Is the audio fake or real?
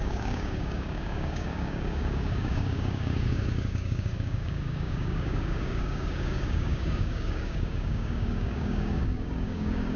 fake